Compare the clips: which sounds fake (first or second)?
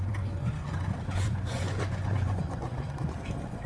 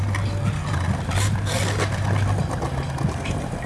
first